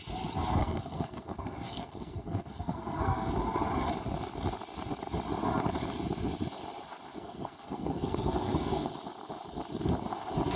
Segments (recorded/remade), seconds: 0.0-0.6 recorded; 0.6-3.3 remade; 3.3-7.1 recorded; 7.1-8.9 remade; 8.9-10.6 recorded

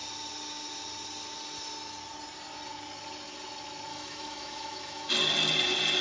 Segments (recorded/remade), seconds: 0.0-3.9 recorded; 3.9-5.1 remade; 5.1-6.0 recorded

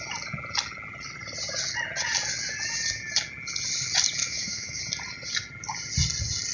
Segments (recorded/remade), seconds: 0.0-4.2 recorded; 4.2-4.8 remade; 4.8-6.5 recorded

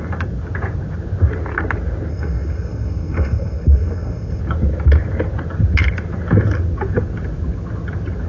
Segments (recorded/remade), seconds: 0.0-2.1 recorded; 2.1-4.4 remade; 4.4-8.3 recorded

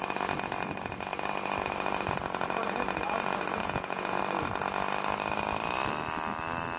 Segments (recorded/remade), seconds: 0.0-3.6 recorded; 3.6-4.2 remade; 4.2-6.8 recorded